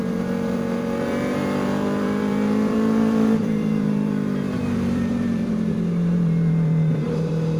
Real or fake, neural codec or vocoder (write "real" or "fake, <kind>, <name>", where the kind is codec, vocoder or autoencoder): fake, vocoder, BigVGAN v2